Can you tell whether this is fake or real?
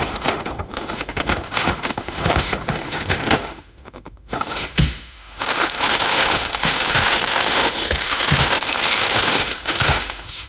fake